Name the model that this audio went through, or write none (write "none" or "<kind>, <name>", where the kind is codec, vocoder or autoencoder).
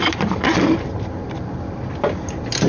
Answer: none